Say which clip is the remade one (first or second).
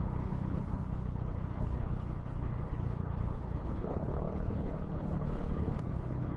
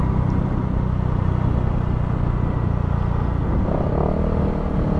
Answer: first